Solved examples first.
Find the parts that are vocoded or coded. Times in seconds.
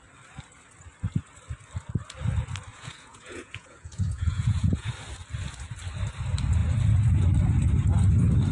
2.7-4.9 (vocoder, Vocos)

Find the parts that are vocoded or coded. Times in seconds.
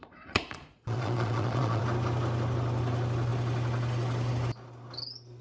0.0-1.8 (vocoder, Vocos)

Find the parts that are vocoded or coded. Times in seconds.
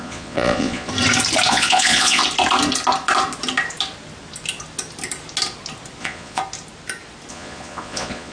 0.0-0.9 (vocoder, Vocos); 1.5-2.2; 6.0-6.4; 7.3-8.3